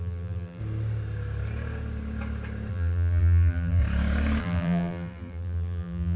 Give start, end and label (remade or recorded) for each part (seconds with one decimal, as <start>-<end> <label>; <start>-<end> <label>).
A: 0.0-0.6 remade; 0.6-2.7 recorded; 2.7-3.8 remade; 3.8-4.4 recorded; 4.4-6.2 remade